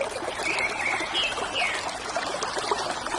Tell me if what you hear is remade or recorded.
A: recorded